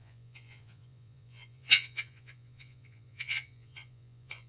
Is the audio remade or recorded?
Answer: remade